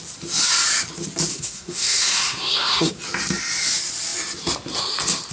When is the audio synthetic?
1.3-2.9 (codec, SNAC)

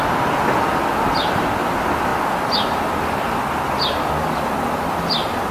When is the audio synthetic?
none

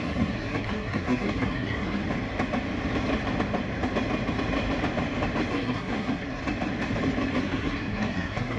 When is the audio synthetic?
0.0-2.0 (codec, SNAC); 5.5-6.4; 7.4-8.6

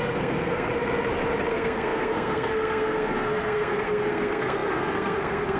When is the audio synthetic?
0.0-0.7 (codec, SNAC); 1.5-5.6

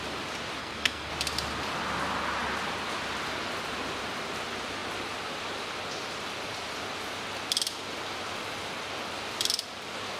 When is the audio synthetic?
0.6-1.1 (codec, SNAC)

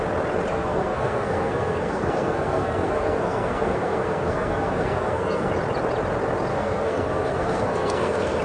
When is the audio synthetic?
0.5-5.5 (codec, SNAC); 6.5-8.4

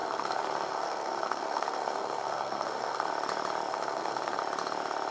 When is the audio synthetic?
0.0-3.1 (codec, SNAC); 3.7-4.4